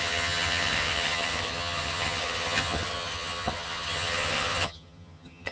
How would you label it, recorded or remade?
remade